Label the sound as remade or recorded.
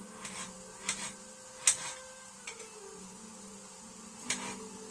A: recorded